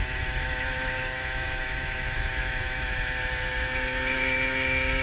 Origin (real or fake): fake